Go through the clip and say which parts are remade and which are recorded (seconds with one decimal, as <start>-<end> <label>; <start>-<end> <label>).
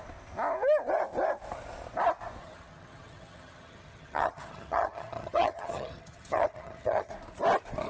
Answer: 0.0-2.4 recorded; 2.4-7.1 remade; 7.1-7.9 recorded